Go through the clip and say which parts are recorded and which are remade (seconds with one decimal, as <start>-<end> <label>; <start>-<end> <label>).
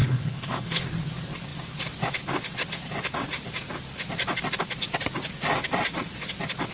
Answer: 0.0-0.8 remade; 0.8-6.7 recorded